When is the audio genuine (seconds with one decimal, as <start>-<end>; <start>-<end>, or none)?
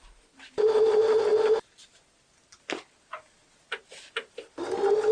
0.0-5.1